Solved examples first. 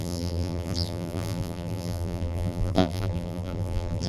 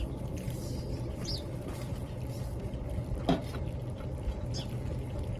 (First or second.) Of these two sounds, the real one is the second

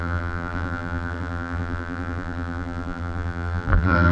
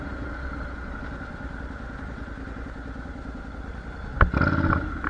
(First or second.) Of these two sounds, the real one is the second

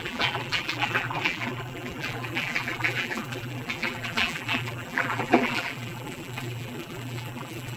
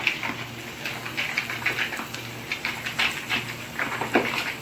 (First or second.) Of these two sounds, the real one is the second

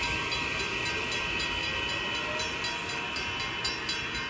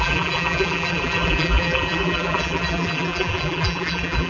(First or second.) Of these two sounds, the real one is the first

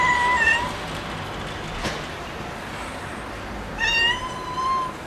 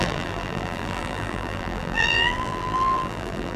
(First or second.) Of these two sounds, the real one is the first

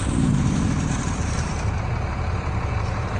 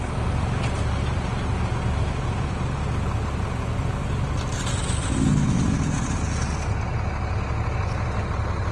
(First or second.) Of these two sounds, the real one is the second